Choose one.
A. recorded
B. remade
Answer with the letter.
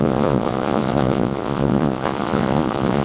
B